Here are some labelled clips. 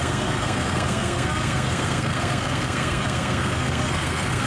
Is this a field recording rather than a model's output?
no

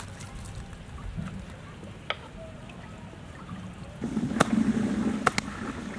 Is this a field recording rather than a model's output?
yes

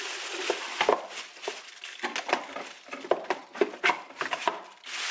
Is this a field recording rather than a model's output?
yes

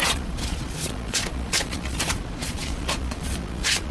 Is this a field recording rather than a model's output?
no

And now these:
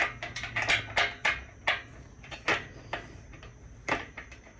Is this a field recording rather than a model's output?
yes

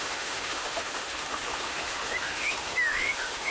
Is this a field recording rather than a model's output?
no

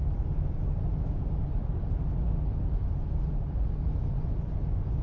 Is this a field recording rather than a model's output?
yes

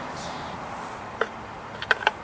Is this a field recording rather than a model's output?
no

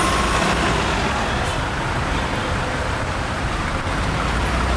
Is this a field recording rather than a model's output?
yes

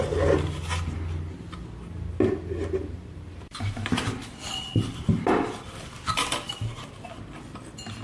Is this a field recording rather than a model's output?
no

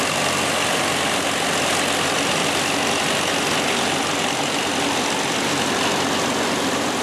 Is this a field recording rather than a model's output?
yes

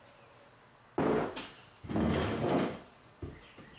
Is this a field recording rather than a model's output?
yes